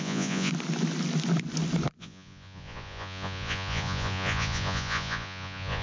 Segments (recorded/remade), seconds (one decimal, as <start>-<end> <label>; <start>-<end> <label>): 0.0-0.5 remade; 0.5-2.0 recorded; 2.0-5.8 remade